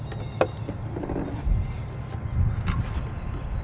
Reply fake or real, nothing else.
real